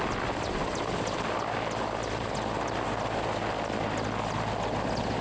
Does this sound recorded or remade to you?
recorded